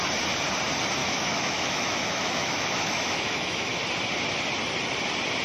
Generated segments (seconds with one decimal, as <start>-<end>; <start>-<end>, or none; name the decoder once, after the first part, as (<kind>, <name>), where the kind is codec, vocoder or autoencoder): 1.0-3.8 (autoencoder, DAC-VAE)